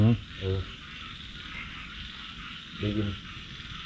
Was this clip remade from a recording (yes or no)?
no